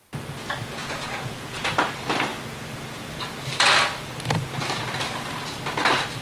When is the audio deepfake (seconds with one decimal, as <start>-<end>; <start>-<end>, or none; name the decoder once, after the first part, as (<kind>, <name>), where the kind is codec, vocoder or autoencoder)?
0.8-1.7 (vocoder, Vocos)